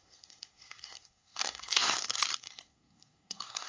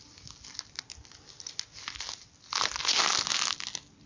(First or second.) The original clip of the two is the second